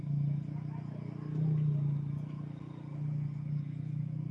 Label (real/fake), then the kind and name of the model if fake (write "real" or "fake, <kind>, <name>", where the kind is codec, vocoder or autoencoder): real